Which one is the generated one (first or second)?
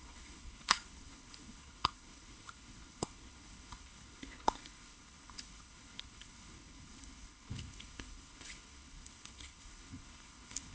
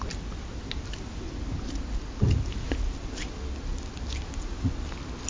first